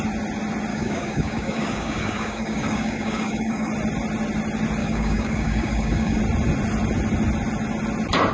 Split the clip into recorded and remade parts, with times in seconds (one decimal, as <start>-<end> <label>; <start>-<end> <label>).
0.0-0.7 recorded; 0.7-3.7 remade; 3.7-4.8 recorded; 4.8-6.2 remade; 6.2-8.3 recorded